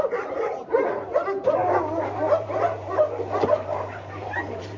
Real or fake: fake